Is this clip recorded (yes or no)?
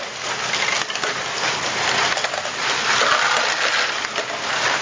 yes